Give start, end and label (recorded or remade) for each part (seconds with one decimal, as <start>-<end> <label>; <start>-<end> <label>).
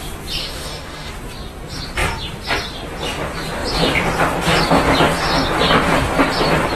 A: 0.0-0.4 recorded; 0.4-1.1 remade; 1.1-6.8 recorded